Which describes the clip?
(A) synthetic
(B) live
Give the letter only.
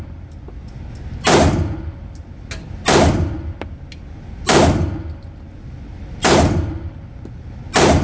B